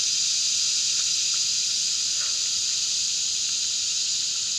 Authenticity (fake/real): real